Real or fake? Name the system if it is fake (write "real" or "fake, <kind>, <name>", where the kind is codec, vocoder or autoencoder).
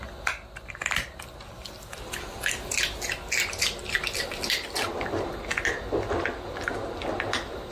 real